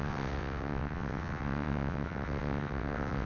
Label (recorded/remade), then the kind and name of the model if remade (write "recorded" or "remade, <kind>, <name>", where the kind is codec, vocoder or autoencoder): remade, vocoder, WaveNeXt